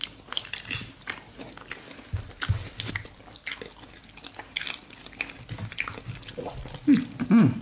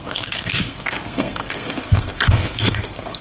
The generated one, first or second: second